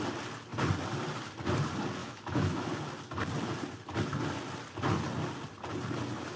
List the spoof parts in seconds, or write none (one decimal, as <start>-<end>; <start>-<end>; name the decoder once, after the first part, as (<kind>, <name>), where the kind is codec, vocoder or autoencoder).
2.0-2.7 (autoencoder, DAC-VAE)